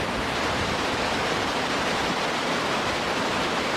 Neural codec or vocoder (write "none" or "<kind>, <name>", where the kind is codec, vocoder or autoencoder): vocoder, BigVGAN v2